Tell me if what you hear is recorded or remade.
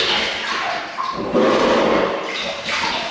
recorded